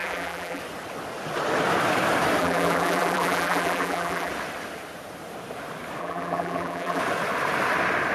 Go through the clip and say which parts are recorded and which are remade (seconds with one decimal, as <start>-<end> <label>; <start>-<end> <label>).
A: 0.0-0.6 remade; 0.6-2.4 recorded; 2.4-4.3 remade; 4.3-6.0 recorded; 6.0-7.0 remade; 7.0-8.1 recorded